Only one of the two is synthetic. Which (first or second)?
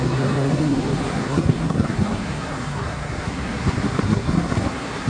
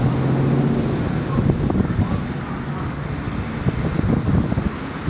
first